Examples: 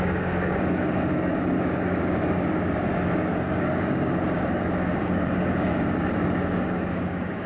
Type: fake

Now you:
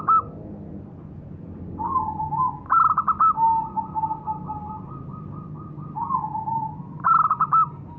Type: real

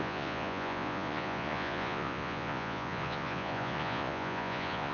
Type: fake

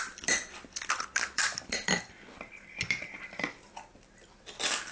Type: fake